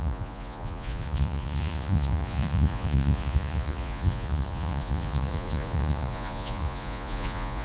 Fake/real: fake